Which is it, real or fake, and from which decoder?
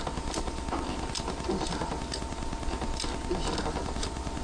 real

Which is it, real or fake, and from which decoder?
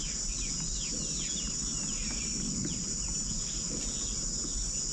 real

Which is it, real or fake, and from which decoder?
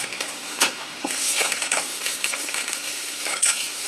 fake, codec, SNAC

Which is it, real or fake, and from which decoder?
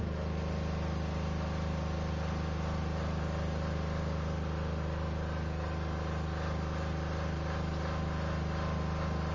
real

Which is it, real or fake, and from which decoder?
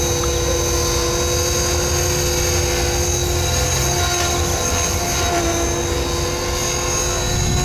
real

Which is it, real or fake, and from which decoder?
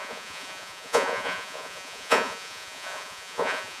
fake, vocoder, Vocos